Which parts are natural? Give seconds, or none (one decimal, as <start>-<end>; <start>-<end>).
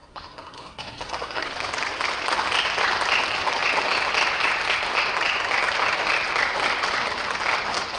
1.5-8.0